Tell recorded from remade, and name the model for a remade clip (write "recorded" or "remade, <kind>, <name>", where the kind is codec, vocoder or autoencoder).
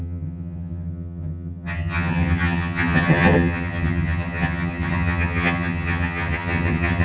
remade, vocoder, HiFi-GAN